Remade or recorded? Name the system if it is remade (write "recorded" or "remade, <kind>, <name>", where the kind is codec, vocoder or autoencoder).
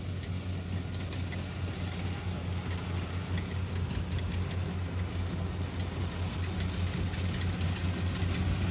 recorded